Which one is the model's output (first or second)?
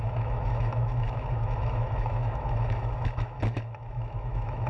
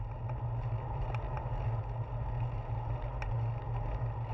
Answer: first